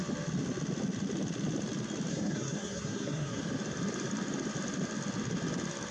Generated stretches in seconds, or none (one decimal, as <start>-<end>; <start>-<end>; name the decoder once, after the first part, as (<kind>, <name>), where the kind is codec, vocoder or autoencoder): 2.1-3.4 (codec, SNAC)